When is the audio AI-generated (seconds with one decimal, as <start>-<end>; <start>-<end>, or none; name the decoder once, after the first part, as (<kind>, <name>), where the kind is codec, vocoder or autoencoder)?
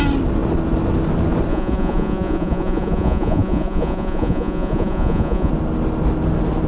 1.5-5.5 (vocoder, Vocos)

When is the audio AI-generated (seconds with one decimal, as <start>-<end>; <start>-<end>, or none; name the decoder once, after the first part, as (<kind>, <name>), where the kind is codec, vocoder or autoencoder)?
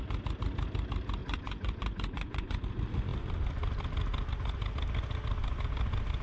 1.2-2.6 (vocoder, Vocos)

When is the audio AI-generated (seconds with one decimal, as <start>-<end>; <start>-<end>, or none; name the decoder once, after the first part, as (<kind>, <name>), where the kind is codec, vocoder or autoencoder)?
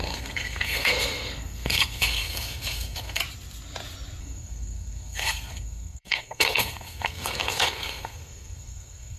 0.0-3.2 (codec, SNAC); 4.2-9.2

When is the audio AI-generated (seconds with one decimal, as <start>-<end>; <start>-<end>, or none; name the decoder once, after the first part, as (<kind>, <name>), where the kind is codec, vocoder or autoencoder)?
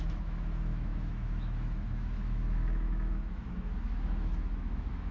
0.0-5.1 (autoencoder, DAC-VAE)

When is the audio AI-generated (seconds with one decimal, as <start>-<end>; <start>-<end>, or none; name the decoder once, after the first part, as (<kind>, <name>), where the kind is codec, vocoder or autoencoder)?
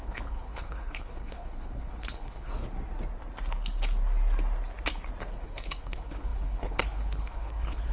0.0-2.6 (codec, HILCodec); 5.2-7.9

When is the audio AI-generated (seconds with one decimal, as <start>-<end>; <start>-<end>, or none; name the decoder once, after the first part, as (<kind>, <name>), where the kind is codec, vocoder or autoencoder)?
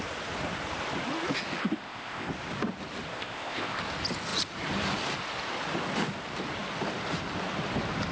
1.6-2.3 (codec, ZipCodec); 3.1-3.8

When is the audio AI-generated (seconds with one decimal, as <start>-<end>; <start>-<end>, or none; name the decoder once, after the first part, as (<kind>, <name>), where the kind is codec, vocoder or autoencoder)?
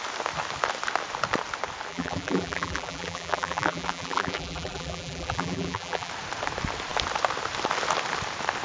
1.9-6.1 (vocoder, BigVGAN v2)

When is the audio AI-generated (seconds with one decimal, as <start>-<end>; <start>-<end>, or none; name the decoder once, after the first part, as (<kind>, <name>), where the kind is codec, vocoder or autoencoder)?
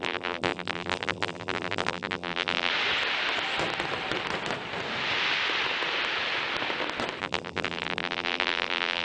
0.0-2.7 (vocoder, BigVGAN v2); 7.2-9.0